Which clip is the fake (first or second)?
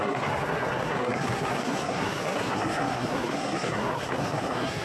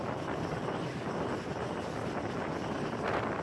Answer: first